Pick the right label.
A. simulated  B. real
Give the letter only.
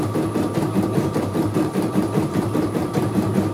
A